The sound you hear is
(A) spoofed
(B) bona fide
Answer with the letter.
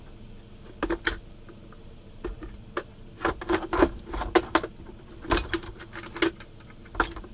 B